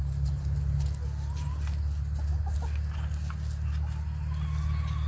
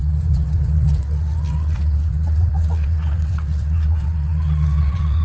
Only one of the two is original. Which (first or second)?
first